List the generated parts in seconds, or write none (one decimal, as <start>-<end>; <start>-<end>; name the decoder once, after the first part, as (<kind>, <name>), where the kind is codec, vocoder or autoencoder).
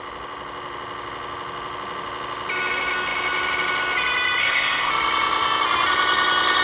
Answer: 4.4-4.9 (codec, ZipCodec)